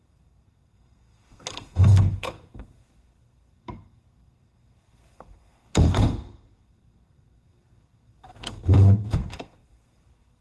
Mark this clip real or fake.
fake